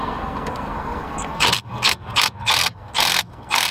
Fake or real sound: fake